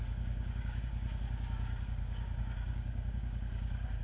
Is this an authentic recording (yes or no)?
no